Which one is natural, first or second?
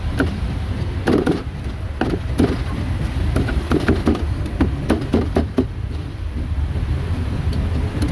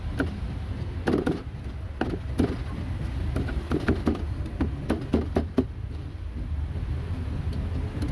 second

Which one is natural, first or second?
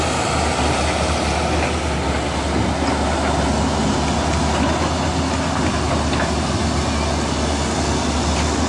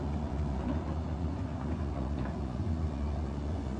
first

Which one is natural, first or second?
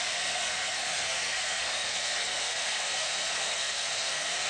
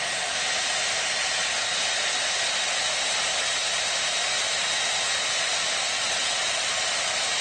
second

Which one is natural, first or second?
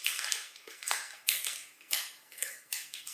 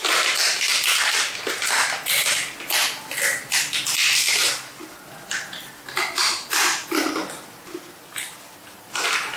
second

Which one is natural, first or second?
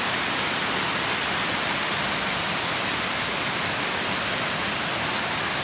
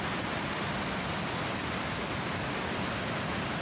second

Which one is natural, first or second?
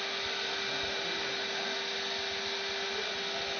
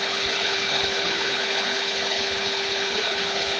first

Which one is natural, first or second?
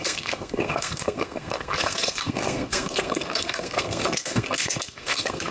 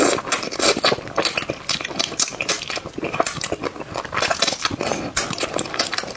second